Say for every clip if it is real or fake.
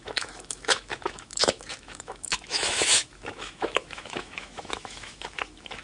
fake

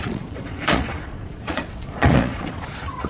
fake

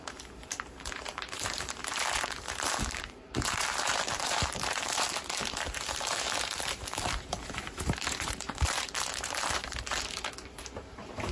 fake